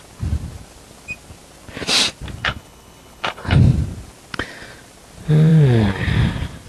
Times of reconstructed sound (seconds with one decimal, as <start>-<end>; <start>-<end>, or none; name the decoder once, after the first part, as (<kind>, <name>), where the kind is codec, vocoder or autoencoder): 2.4-3.6 (codec, HILCodec)